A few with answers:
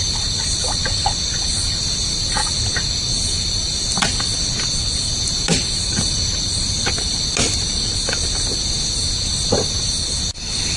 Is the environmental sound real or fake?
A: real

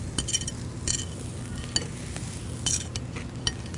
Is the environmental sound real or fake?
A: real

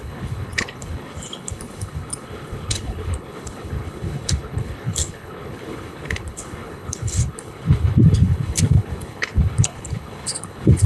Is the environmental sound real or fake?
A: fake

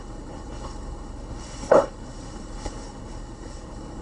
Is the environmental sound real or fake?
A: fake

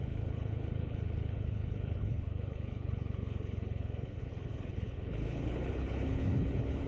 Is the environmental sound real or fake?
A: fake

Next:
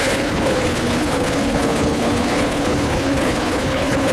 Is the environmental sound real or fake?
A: fake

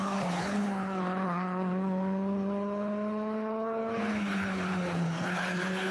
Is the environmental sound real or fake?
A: fake